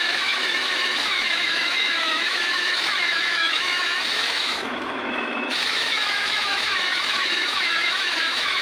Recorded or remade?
remade